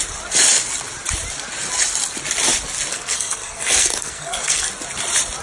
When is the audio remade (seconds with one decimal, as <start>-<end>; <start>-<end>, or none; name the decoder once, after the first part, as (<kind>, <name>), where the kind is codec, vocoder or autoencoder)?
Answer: 2.9-4.7 (codec, SNAC)